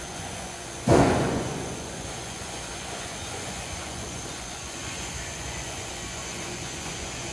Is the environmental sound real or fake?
fake